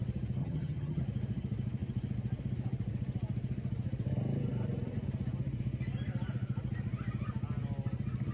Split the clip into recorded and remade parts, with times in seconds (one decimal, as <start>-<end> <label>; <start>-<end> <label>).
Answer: 0.0-0.4 recorded; 0.4-1.0 remade; 1.0-8.3 recorded